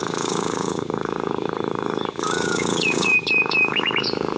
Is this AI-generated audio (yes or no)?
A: yes